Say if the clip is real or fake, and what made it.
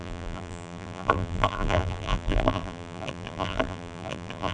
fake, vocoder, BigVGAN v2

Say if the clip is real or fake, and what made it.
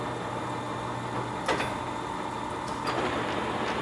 real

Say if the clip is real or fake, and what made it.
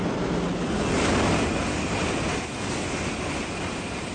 real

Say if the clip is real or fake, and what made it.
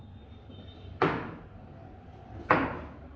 real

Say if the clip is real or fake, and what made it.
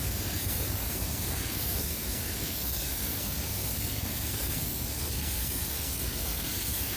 fake, codec, SNAC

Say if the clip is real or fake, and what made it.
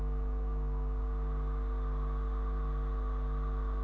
real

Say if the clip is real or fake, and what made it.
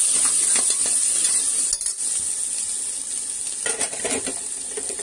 real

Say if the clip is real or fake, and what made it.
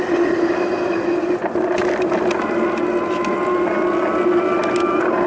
real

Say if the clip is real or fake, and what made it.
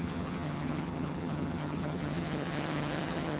fake, vocoder, HiFi-GAN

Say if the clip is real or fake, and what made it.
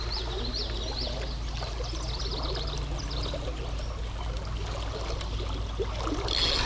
real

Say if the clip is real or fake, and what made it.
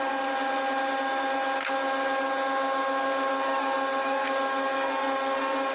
real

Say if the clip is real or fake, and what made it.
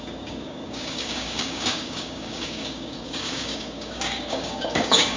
fake, codec, DAC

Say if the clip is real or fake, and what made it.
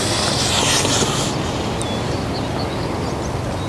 real